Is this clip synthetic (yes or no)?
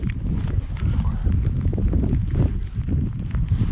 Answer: no